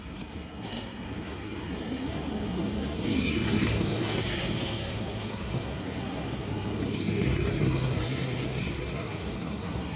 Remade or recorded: remade